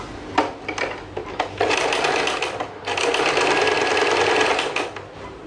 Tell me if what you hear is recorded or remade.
recorded